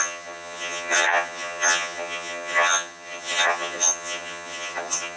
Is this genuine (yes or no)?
no